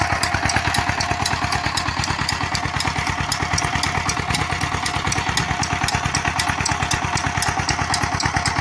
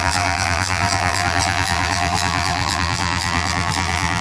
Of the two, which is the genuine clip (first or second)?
first